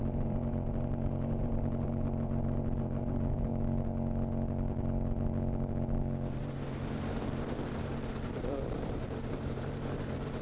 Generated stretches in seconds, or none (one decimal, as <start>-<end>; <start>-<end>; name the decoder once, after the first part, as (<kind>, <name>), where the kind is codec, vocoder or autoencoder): 0.0-3.5 (vocoder, BigVGAN v2); 6.3-10.4